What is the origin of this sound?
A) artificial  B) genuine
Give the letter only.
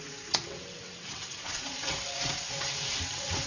A